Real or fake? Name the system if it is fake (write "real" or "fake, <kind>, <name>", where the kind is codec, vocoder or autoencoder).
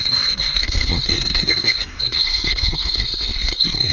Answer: fake, codec, SNAC